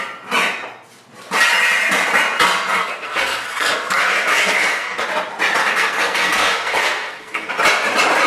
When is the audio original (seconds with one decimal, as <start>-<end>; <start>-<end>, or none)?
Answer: 0.0-2.8; 5.0-5.6; 7.5-8.3